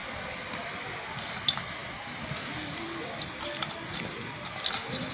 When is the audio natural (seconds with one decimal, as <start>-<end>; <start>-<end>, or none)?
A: 0.0-5.1